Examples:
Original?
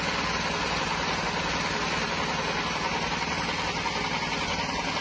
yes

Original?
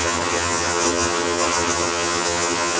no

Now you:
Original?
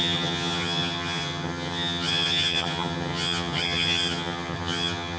no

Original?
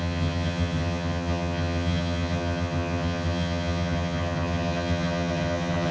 no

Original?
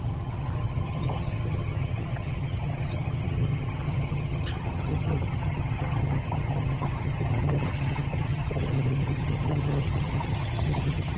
no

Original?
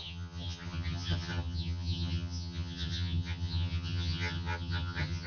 no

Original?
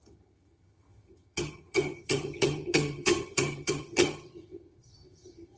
no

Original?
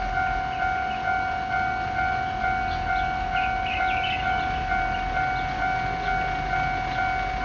yes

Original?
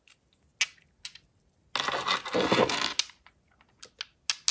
yes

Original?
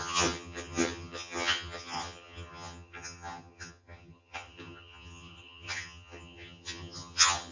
no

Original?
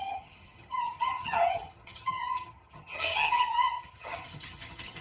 no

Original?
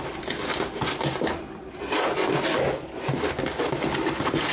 yes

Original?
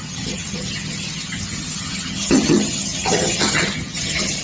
no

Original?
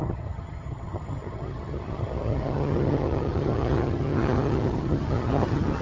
no